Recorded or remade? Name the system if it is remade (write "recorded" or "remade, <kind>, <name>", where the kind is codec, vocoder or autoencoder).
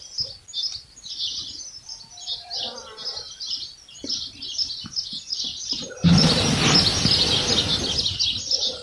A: recorded